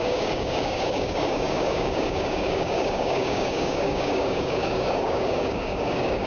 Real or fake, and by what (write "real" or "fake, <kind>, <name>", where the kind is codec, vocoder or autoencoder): fake, codec, DAC